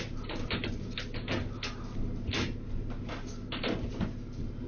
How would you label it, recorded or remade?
recorded